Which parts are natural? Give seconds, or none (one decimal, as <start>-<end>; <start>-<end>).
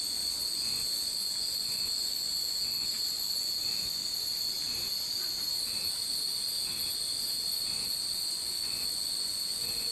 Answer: 4.0-8.3